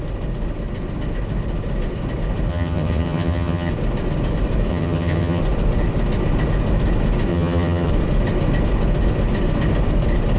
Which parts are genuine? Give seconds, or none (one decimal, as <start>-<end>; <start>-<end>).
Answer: 0.0-2.5; 3.7-4.7; 5.4-7.3; 7.9-10.4